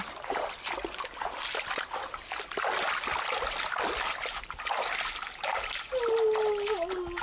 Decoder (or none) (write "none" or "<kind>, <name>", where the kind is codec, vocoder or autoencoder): none